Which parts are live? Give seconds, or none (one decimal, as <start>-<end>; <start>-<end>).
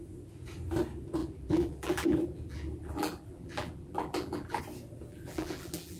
0.0-1.2; 4.6-5.1